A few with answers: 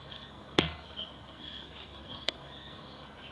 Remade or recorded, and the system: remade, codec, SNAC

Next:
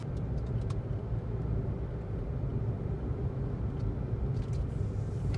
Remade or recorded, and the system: recorded